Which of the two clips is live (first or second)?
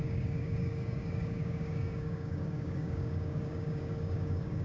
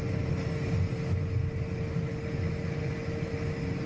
second